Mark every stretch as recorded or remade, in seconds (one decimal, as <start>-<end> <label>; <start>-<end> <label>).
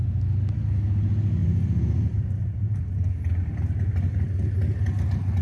0.0-5.4 recorded